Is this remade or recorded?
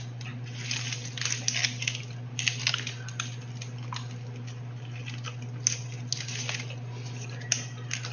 recorded